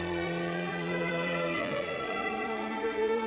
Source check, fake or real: fake